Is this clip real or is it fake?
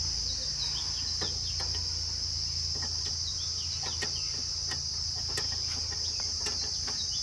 real